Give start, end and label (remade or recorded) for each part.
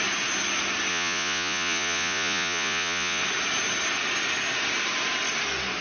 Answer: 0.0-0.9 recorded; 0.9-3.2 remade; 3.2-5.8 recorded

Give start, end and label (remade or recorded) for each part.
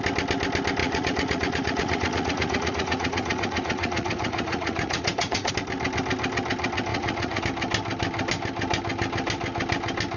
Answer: 0.0-0.8 recorded; 0.8-5.5 remade; 5.5-6.9 recorded; 6.9-7.4 remade; 7.4-10.2 recorded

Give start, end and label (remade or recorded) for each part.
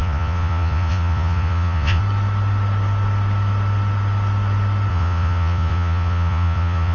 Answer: 0.0-2.0 remade; 2.0-4.9 recorded; 4.9-6.9 remade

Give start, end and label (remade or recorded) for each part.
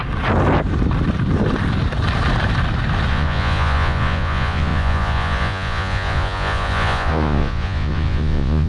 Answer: 0.0-3.1 recorded; 3.1-8.7 remade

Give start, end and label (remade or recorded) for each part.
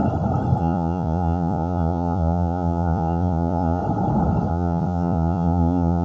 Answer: 0.0-0.6 recorded; 0.6-3.8 remade; 3.8-4.5 recorded; 4.5-6.0 remade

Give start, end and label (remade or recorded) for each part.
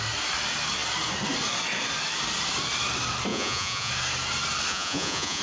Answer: 0.0-3.3 recorded; 3.3-3.9 remade; 3.9-4.7 recorded; 4.7-5.4 remade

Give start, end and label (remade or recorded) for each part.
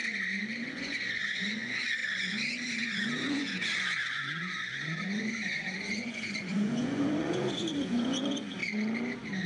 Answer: 0.0-0.6 recorded; 0.6-8.6 remade; 8.6-9.5 recorded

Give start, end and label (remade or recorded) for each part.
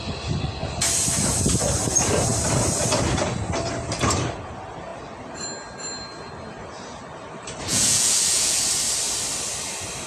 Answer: 0.0-7.7 recorded; 7.7-8.6 remade; 8.6-10.1 recorded